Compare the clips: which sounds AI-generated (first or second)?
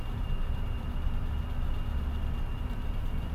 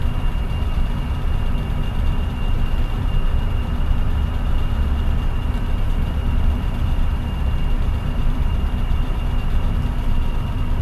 second